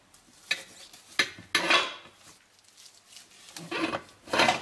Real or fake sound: real